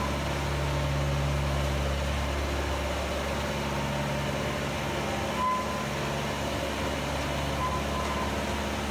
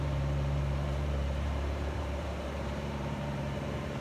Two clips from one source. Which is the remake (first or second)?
second